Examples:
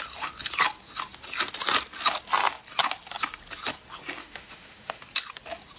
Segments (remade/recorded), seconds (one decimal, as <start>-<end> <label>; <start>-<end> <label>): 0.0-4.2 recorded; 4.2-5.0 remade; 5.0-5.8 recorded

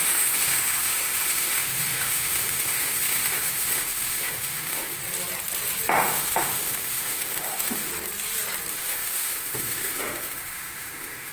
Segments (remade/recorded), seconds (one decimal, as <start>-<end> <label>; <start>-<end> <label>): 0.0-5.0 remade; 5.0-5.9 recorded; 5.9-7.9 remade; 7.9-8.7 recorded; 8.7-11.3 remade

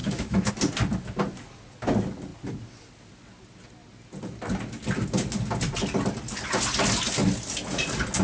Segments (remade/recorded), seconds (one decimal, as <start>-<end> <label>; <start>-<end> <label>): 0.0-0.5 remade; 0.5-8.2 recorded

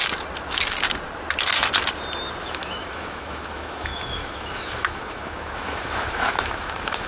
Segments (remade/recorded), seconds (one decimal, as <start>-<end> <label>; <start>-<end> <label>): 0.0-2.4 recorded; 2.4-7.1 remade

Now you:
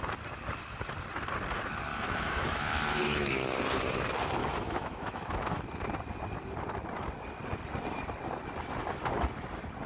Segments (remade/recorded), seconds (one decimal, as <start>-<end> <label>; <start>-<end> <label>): 0.0-1.9 recorded; 1.9-3.3 remade; 3.3-4.4 recorded; 4.4-5.6 remade; 5.6-9.9 recorded

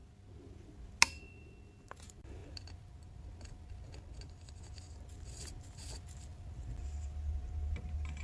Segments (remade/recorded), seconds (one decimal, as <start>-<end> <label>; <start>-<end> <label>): 0.0-8.2 recorded

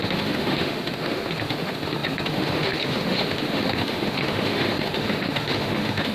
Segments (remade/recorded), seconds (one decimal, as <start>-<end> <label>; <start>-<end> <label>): 0.0-6.1 remade